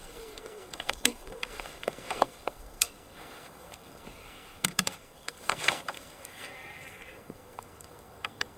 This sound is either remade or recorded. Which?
remade